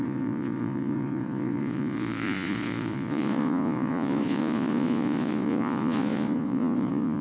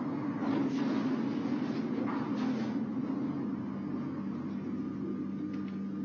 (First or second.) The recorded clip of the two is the second